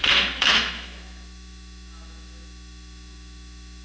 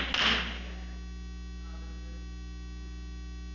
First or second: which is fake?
first